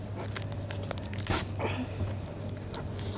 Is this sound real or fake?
real